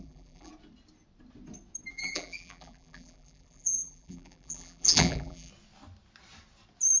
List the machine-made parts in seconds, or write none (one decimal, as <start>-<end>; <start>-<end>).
0.0-0.5; 1.9-5.5